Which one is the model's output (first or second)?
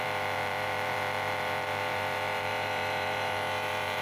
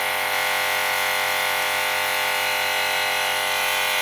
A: first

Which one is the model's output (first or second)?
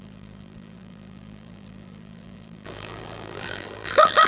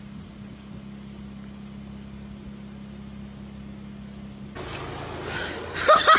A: first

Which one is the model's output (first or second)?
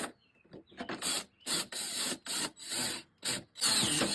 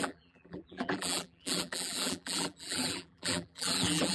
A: second